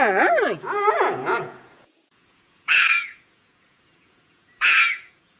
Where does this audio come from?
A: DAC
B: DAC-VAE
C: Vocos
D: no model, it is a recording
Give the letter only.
C